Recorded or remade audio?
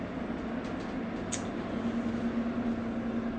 recorded